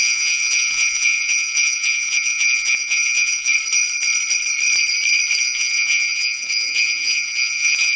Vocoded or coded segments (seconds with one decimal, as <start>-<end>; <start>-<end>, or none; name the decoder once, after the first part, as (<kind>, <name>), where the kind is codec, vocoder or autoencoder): 0.0-3.5 (vocoder, Vocos); 5.4-8.0